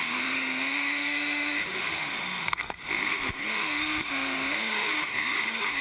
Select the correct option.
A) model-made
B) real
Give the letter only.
A